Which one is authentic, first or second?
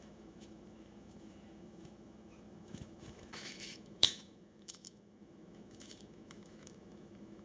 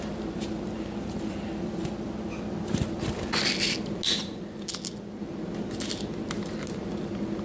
second